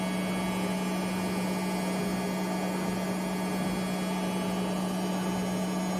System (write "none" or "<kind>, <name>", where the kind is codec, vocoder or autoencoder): none